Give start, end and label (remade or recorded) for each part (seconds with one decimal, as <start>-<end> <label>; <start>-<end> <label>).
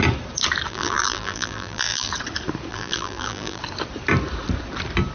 0.0-0.7 recorded; 0.7-2.1 remade; 2.1-2.7 recorded; 2.7-3.6 remade; 3.6-5.1 recorded